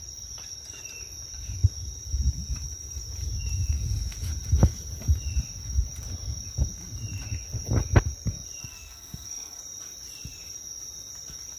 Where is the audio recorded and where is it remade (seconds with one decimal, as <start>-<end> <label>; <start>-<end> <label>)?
0.0-8.6 recorded; 8.6-9.6 remade; 9.6-11.6 recorded